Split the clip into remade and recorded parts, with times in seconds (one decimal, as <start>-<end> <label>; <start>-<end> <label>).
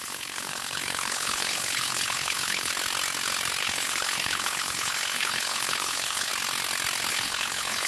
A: 0.0-2.7 remade; 2.7-3.6 recorded; 3.6-6.3 remade; 6.3-7.1 recorded; 7.1-7.9 remade